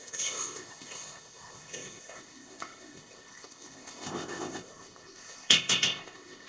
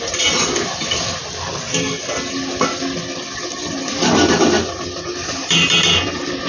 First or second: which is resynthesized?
first